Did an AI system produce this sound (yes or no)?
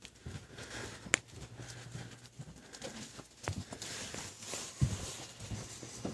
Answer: no